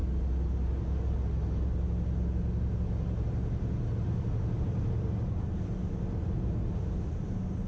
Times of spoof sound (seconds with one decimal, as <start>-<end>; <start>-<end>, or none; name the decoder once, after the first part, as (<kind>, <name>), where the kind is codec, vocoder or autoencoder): none